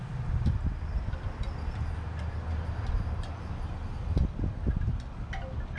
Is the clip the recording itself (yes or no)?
yes